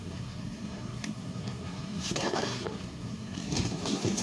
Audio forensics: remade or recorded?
remade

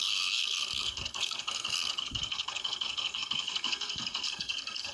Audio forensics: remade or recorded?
remade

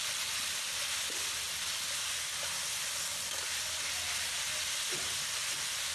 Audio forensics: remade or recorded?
recorded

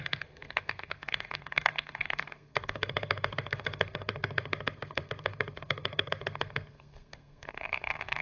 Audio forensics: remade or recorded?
remade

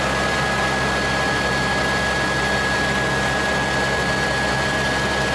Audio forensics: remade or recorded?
recorded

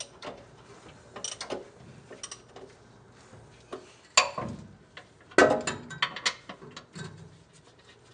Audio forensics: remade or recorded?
recorded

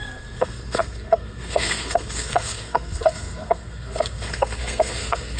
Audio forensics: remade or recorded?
remade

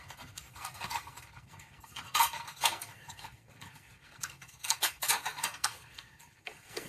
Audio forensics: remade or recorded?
remade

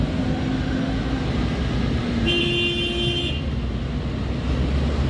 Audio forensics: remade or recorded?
recorded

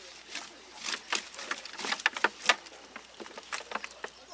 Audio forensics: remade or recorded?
recorded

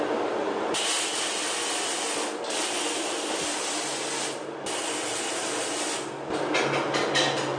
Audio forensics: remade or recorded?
recorded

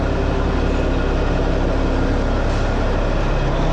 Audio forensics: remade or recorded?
recorded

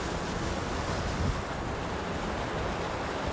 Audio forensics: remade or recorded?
recorded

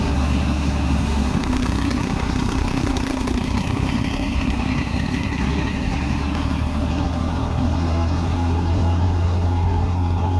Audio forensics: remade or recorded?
remade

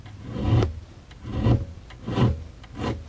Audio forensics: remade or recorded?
recorded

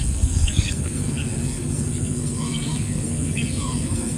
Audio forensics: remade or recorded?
remade